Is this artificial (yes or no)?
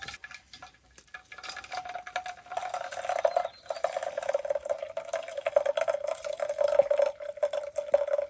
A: no